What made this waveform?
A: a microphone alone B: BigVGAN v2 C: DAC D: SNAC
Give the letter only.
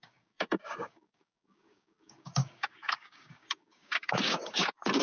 C